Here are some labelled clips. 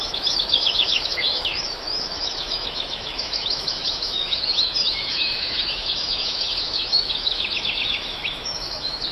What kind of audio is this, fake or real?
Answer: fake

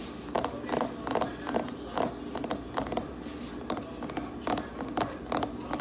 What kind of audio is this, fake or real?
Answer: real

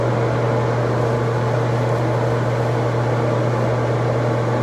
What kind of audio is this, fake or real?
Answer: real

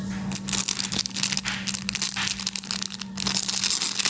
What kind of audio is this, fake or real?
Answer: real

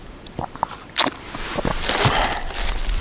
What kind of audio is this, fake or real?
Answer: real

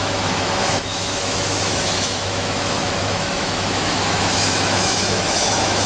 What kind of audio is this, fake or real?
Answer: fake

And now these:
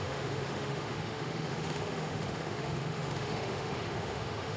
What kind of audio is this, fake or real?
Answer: fake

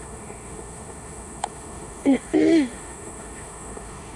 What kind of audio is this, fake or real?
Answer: fake